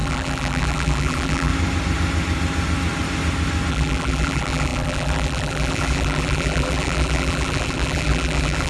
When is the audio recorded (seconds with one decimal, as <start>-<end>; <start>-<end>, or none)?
1.5-3.7